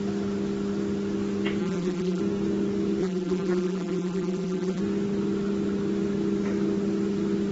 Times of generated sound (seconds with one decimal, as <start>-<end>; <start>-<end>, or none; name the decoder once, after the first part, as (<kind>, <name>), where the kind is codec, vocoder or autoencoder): 1.6-2.2 (vocoder, BigVGAN v2); 3.0-4.8